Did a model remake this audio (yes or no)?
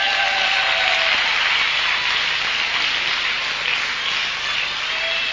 no